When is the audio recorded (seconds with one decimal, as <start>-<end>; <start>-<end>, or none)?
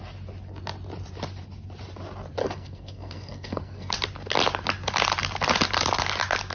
0.0-2.4; 3.9-6.5